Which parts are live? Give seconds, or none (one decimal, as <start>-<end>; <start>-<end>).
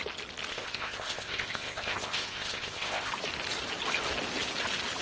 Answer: 0.0-0.5; 3.1-5.0